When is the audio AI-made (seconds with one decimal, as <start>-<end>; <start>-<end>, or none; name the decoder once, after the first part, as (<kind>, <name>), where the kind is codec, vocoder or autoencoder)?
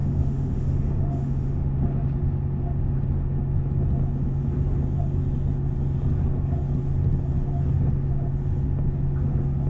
0.0-1.8 (autoencoder, DAC-VAE)